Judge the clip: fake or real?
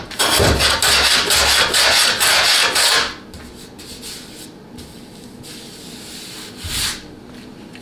real